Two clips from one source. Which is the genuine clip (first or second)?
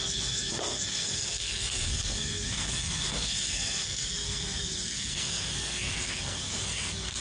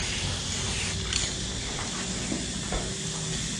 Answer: second